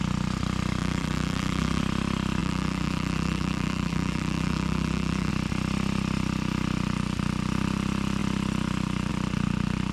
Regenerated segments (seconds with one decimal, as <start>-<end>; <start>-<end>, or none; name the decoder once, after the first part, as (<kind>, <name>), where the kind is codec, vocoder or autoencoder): 0.8-1.8 (vocoder, BigVGAN v2); 2.4-5.3